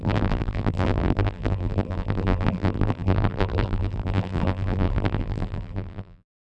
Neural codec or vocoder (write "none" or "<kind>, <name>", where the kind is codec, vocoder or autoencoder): vocoder, BigVGAN v2